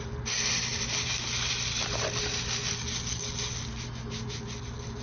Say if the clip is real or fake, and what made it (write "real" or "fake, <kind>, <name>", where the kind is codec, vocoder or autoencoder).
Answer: real